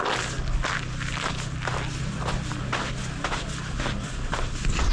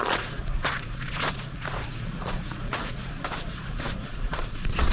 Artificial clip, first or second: second